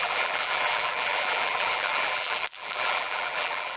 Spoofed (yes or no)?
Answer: yes